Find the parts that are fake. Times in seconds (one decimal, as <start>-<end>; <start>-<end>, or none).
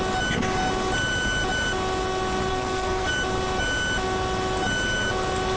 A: 2.5-3.1